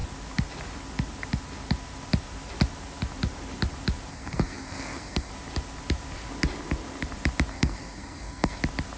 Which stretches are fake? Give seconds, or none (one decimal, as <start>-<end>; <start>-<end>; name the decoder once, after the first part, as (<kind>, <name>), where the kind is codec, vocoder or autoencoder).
4.1-5.3 (codec, SNAC); 7.5-8.6